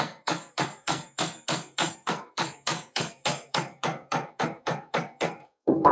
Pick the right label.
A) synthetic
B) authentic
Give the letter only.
A